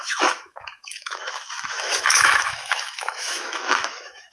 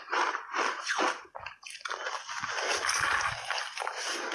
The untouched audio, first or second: second